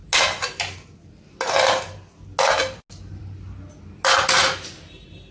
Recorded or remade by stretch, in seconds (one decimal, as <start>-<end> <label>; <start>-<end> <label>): 0.0-5.3 recorded